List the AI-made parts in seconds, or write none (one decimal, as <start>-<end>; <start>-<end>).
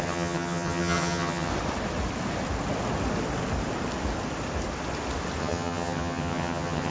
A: 0.0-1.5; 5.4-6.9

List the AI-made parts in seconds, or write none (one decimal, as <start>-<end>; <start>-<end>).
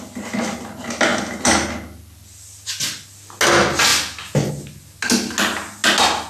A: none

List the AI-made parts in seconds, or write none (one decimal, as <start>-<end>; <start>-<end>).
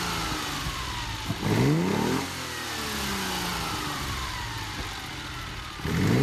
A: 3.5-4.4